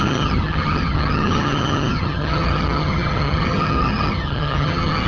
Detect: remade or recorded remade